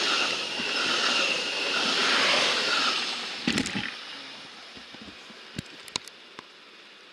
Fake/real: real